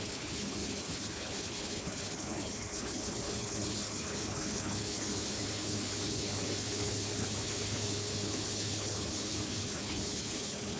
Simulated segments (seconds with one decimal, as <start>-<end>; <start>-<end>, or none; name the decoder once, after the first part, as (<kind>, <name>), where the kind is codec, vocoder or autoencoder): 0.0-10.8 (codec, HILCodec)